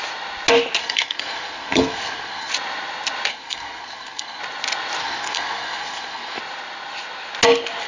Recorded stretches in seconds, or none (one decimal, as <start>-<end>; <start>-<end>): 0.0-0.8; 2.5-3.3; 4.4-5.0; 6.4-7.9